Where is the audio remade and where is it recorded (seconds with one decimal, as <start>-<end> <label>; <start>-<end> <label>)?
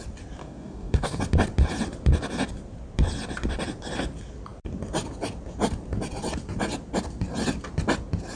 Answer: 0.0-0.4 recorded; 0.4-1.2 remade; 1.2-8.3 recorded